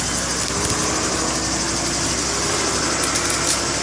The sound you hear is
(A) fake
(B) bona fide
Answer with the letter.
B